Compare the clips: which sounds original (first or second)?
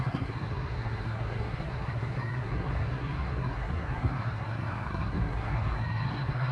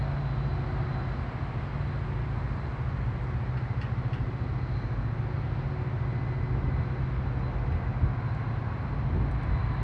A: second